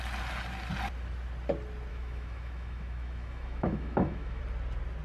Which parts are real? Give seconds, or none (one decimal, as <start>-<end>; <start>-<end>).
0.0-1.9; 4.4-5.0

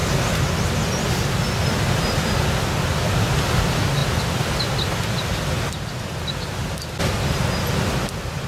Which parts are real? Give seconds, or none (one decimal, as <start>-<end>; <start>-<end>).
0.0-8.5

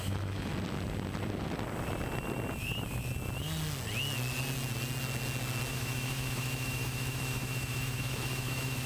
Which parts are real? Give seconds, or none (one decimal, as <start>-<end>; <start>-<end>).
0.5-5.7

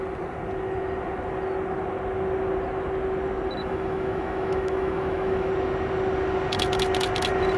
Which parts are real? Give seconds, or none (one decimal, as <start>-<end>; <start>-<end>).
0.0-3.6; 5.5-7.6

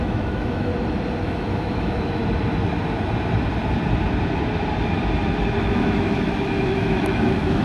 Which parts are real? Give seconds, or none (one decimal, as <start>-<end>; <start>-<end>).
0.7-1.2; 2.2-5.6

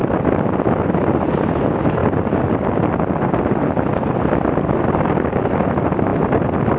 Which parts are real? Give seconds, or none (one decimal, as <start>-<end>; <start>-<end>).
0.0-6.8